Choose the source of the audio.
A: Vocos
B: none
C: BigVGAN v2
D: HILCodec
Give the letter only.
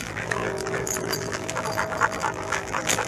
C